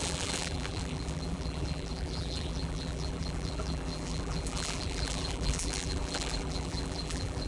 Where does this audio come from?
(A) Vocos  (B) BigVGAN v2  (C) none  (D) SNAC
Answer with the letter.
B